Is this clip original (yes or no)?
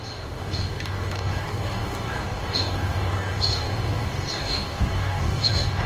no